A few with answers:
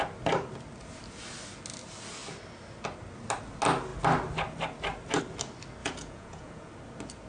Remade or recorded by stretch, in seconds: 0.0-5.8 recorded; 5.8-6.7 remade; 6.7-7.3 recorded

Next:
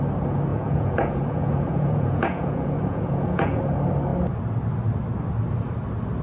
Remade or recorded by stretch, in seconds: 0.0-0.5 recorded; 0.5-3.6 remade; 3.6-6.2 recorded

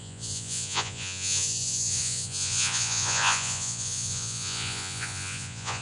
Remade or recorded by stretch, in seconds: 0.0-5.8 remade